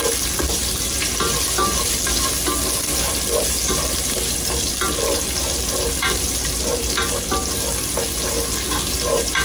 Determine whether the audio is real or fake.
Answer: real